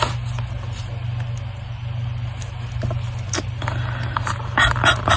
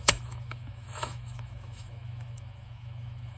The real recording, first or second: first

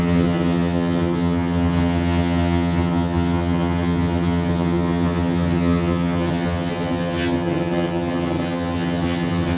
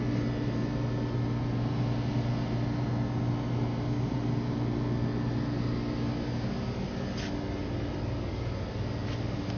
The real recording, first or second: second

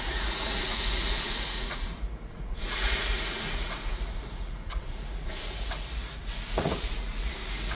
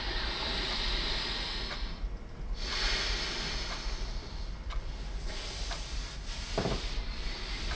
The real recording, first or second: second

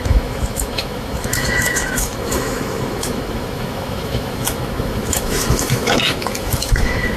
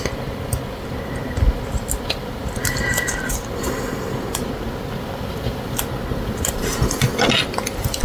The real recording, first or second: second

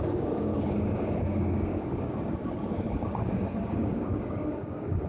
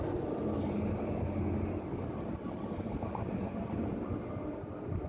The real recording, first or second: second